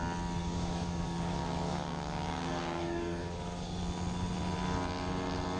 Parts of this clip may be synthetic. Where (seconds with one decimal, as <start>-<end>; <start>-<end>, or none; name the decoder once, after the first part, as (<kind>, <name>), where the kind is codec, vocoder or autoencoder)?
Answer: 0.4-3.8 (codec, DAC)